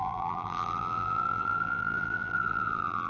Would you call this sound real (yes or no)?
no